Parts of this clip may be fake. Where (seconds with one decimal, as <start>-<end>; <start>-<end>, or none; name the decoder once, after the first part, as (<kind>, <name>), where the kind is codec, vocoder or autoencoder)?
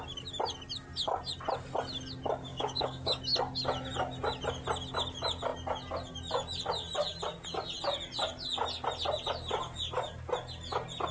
2.5-3.2 (codec, DAC)